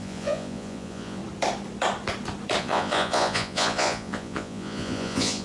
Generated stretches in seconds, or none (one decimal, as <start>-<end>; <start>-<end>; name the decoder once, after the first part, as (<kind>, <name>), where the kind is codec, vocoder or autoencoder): 0.0-1.2 (vocoder, Vocos); 2.6-5.4